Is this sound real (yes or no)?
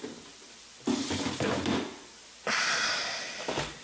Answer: no